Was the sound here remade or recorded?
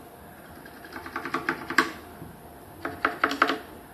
recorded